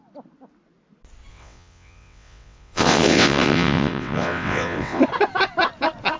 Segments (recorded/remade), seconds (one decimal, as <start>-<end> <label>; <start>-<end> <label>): 0.0-1.3 recorded; 1.3-5.0 remade; 5.0-6.2 recorded